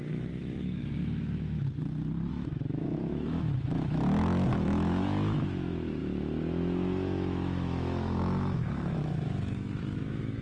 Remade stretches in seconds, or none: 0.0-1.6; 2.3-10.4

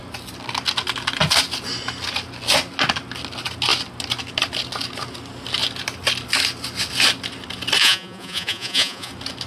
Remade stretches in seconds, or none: 7.8-9.1

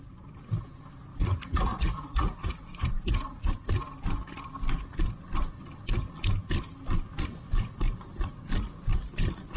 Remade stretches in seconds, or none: 1.1-3.5

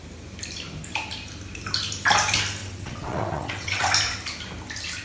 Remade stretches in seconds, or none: 2.6-3.9

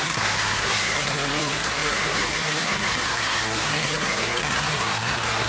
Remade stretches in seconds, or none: 0.0-5.5